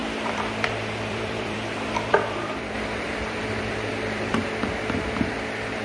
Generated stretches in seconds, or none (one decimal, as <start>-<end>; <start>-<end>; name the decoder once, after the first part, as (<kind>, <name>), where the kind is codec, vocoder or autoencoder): 0.0-4.4 (vocoder, BigVGAN v2)